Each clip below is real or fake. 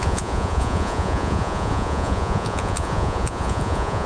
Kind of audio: fake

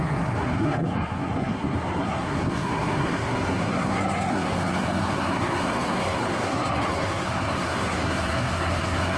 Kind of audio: fake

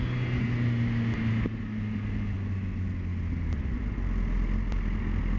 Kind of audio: real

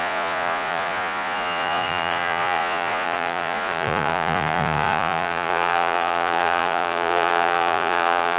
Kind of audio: fake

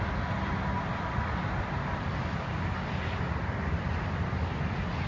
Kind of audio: real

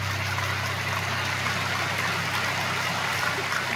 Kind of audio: real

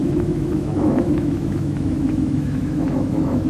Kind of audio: fake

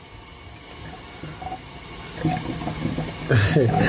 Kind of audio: real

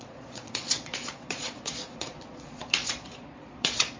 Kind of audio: fake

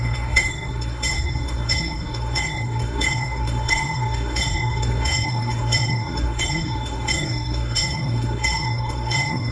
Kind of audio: fake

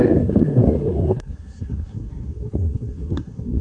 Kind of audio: fake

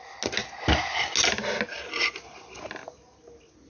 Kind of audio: real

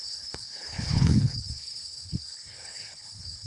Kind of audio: fake